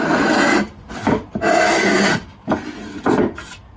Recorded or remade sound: recorded